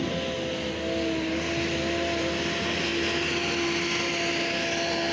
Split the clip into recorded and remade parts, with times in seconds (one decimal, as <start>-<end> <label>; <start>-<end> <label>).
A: 0.0-5.1 recorded